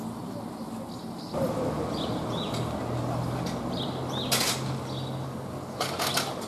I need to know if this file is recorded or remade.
recorded